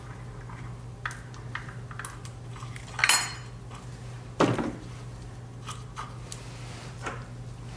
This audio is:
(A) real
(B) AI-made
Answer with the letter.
A